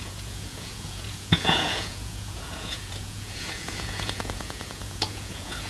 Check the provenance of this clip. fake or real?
fake